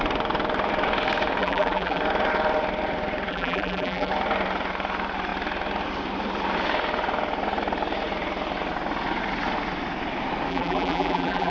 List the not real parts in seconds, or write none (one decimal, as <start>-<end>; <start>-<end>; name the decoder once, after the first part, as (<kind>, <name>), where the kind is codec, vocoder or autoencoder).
1.4-2.0 (vocoder, BigVGAN v2); 3.3-4.1; 10.5-11.5